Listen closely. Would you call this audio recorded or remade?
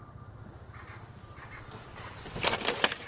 recorded